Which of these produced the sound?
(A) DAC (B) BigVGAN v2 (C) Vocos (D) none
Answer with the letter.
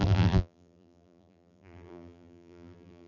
B